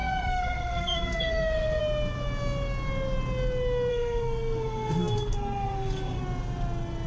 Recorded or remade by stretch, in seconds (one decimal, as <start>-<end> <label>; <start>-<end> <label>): 0.0-1.8 remade; 1.8-3.9 recorded; 3.9-6.2 remade; 6.2-7.1 recorded

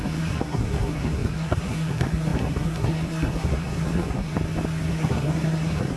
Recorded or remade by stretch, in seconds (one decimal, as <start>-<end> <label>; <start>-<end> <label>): 0.0-4.3 remade; 4.3-4.9 recorded; 4.9-6.0 remade

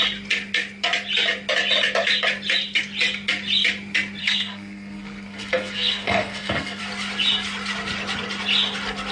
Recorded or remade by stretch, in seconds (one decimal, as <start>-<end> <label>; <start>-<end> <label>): 0.0-4.2 recorded; 4.2-6.8 remade; 6.8-9.1 recorded

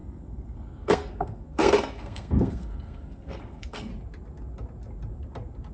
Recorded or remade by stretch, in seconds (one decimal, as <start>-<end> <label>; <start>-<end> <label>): 0.0-3.9 remade; 3.9-5.7 recorded

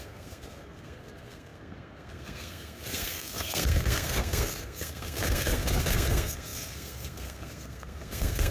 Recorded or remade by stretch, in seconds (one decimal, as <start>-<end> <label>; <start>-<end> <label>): 0.0-8.5 remade